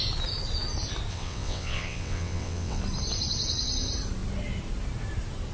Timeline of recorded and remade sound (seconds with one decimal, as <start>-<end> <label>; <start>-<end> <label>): 0.0-1.1 recorded; 1.1-2.8 remade; 2.8-5.5 recorded

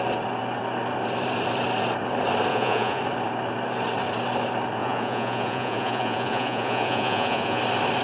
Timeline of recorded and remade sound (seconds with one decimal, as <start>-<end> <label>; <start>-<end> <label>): 0.0-2.5 recorded; 2.5-3.0 remade; 3.0-4.8 recorded; 4.8-7.6 remade; 7.6-8.0 recorded

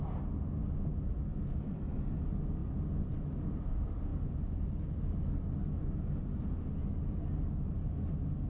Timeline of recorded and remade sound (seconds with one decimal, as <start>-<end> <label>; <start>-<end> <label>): 0.0-8.5 recorded

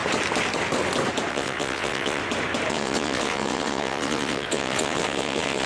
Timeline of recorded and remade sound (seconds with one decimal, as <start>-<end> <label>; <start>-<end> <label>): 0.0-1.3 recorded; 1.3-2.2 remade; 2.2-2.7 recorded; 2.7-5.7 remade

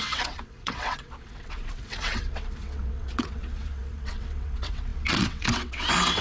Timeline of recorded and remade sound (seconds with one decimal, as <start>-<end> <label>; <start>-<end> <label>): 0.0-6.2 remade

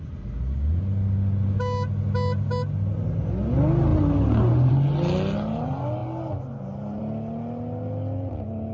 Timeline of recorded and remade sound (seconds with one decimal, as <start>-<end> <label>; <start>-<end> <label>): 0.0-8.7 recorded

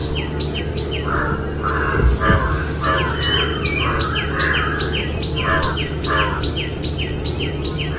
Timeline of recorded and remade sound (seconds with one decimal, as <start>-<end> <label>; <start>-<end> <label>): 0.0-5.0 recorded; 5.0-7.6 remade; 7.6-8.0 recorded